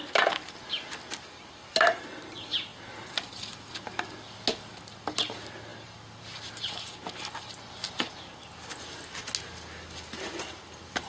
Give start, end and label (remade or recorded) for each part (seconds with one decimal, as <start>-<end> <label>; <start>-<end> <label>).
0.0-11.1 recorded

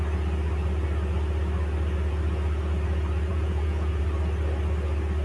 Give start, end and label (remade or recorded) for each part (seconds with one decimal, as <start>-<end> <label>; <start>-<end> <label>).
0.0-3.3 recorded; 3.3-4.0 remade; 4.0-5.2 recorded

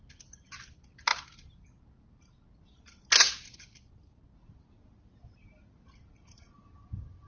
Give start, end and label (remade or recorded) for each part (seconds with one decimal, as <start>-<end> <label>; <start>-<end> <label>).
0.0-7.3 recorded

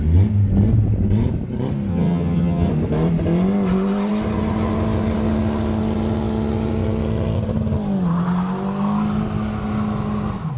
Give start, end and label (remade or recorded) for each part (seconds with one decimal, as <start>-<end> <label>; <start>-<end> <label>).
0.0-1.9 recorded; 1.9-2.7 remade; 2.7-10.6 recorded

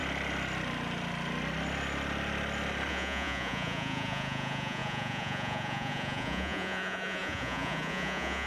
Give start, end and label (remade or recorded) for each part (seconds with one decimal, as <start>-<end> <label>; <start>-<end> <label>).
0.0-2.9 recorded; 2.9-8.5 remade

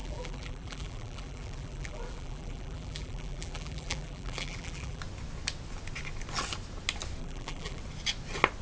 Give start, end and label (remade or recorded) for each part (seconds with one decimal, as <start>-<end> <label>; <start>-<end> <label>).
0.0-5.0 remade; 5.0-7.2 recorded; 7.2-7.8 remade; 7.8-8.6 recorded

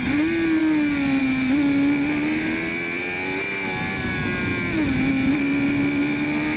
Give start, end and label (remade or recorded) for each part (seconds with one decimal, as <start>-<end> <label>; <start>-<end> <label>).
0.0-6.6 recorded